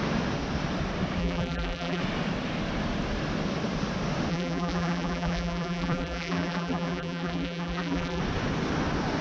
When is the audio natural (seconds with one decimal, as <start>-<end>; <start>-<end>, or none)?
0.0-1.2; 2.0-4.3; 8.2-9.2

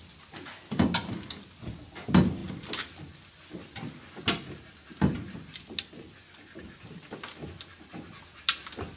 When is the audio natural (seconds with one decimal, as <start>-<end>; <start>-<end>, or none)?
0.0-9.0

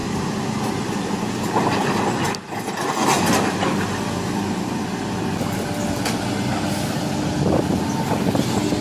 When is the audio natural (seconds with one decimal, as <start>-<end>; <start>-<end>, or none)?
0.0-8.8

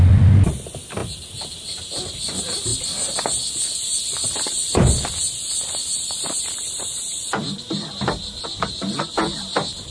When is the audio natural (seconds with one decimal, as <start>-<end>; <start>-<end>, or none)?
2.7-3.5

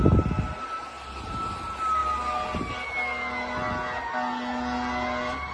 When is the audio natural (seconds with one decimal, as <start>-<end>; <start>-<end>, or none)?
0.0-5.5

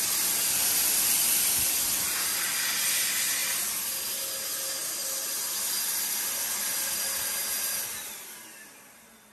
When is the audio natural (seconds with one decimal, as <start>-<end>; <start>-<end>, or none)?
0.0-9.3

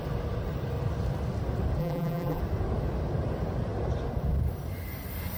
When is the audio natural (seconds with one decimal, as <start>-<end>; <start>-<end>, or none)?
0.0-1.8; 2.4-5.4

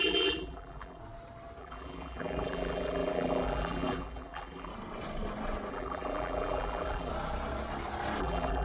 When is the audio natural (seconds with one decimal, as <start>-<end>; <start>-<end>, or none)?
1.0-1.6; 4.7-5.7; 7.1-8.2